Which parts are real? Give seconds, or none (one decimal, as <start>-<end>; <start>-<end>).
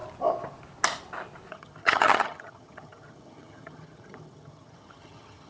0.0-1.5